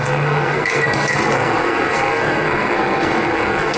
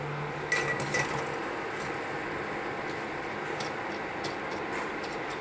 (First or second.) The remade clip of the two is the first